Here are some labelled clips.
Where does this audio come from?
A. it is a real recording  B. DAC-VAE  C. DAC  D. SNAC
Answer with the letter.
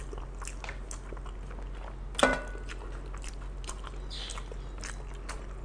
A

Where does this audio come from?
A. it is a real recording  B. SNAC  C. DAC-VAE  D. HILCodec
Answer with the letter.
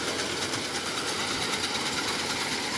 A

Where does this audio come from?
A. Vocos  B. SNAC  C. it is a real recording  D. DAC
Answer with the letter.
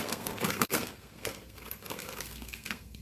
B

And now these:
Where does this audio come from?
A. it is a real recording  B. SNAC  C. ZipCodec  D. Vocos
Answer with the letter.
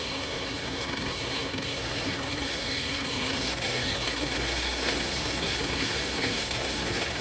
B